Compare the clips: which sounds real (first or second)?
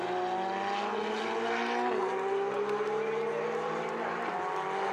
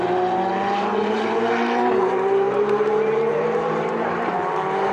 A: first